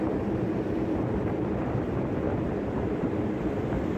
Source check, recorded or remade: remade